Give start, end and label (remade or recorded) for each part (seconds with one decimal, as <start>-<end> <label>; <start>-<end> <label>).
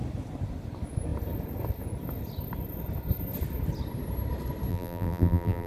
0.0-4.7 recorded; 4.7-5.7 remade